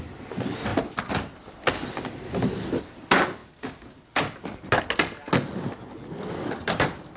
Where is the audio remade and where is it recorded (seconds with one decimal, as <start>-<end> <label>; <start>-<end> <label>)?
0.0-7.2 recorded